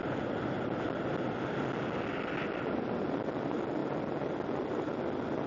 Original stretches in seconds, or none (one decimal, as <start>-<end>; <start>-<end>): 0.0-5.5